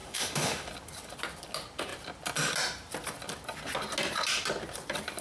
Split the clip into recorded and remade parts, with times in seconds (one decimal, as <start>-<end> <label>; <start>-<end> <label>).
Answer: 0.0-0.7 remade; 0.7-5.2 recorded